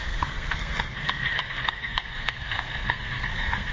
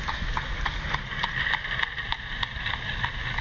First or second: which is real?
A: second